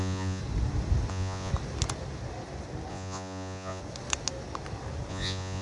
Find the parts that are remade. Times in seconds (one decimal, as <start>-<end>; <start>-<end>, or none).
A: 0.0-0.4; 1.1-1.5; 2.9-3.8; 5.1-5.6